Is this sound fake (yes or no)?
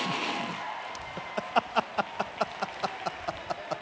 no